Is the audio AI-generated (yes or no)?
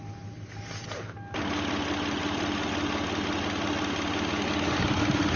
no